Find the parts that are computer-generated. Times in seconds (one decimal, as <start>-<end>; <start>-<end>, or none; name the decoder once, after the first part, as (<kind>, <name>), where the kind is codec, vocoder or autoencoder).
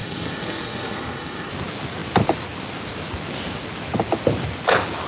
0.0-1.5 (codec, SNAC)